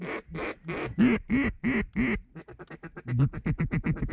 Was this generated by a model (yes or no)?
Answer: no